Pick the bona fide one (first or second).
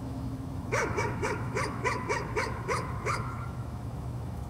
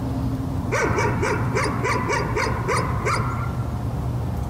second